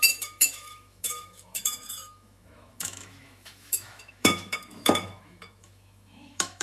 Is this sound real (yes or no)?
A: no